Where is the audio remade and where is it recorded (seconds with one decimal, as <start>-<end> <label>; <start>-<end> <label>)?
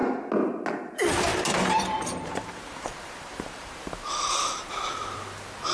0.0-1.3 recorded; 1.3-4.7 remade; 4.7-5.7 recorded